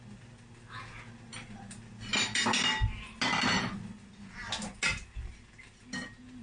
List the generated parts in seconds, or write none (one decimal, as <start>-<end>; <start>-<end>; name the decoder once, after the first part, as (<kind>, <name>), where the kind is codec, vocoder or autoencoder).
none